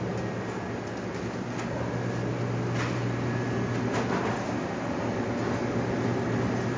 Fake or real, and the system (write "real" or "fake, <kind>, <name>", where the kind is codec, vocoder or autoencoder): real